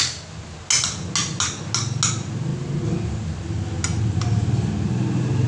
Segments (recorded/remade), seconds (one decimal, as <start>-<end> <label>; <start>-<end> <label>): 0.0-5.5 recorded